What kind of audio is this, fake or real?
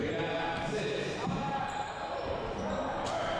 fake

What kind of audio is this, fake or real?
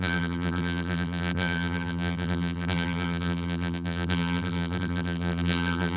fake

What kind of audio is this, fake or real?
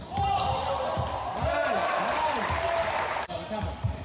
fake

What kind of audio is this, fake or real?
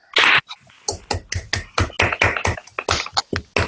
real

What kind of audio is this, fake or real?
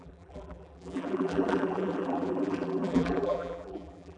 fake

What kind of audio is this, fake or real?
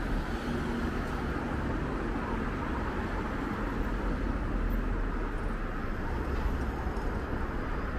real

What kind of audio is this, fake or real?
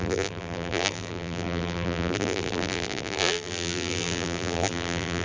fake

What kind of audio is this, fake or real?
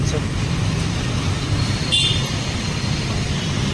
fake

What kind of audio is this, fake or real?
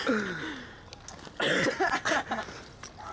real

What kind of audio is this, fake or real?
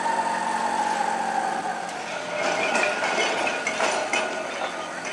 real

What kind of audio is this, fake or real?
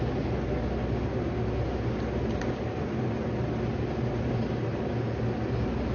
real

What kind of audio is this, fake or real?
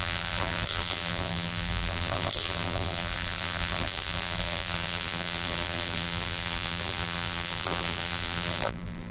fake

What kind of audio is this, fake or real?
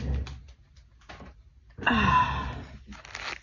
real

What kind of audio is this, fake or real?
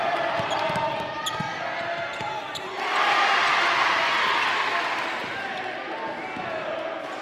real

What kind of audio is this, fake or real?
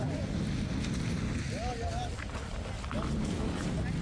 real